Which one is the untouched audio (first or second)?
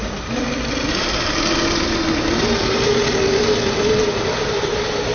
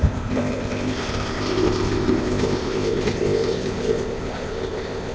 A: first